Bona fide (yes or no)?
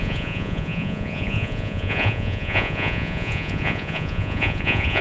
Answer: no